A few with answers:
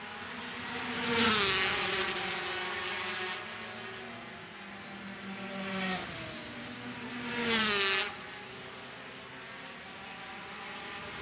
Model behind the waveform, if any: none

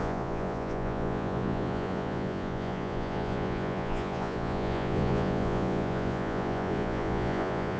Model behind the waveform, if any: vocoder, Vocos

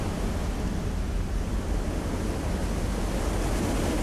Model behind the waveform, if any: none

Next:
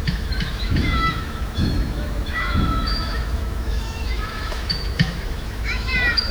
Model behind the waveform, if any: autoencoder, DAC-VAE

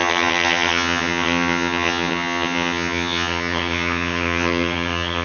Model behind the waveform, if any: vocoder, HiFi-GAN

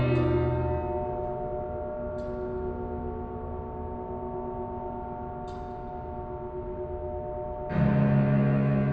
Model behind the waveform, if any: none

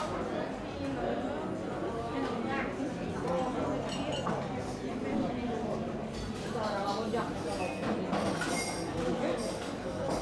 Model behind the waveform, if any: none